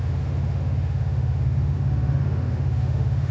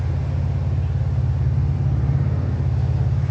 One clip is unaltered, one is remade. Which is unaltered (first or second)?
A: second